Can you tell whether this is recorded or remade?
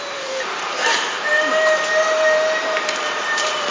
remade